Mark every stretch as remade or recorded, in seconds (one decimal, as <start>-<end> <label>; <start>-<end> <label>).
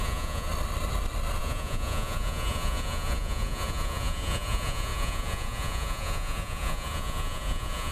0.0-0.5 remade; 0.5-1.4 recorded; 1.4-7.9 remade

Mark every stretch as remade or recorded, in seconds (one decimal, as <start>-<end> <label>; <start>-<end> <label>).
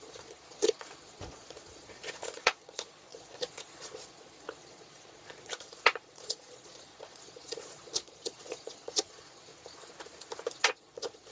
0.0-9.5 remade; 9.5-10.5 recorded; 10.5-11.3 remade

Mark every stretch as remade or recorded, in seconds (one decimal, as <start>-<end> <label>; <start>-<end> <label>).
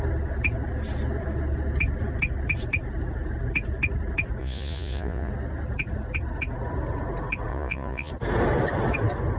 0.0-4.4 recorded; 4.4-5.3 remade; 5.3-7.5 recorded; 7.5-8.1 remade; 8.1-9.4 recorded